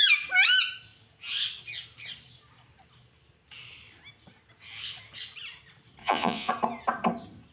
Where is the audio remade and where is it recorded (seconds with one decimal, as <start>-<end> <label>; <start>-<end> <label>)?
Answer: 0.0-6.0 recorded; 6.0-6.5 remade; 6.5-7.5 recorded